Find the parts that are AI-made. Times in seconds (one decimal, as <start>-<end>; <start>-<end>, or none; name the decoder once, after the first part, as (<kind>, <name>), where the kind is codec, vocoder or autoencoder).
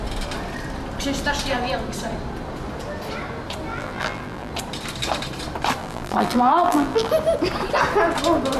3.7-4.5 (vocoder, BigVGAN v2); 5.8-7.1